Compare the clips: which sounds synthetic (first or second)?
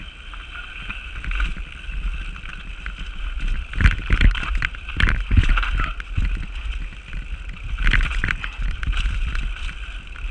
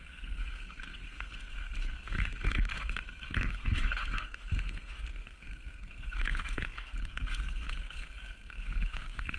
second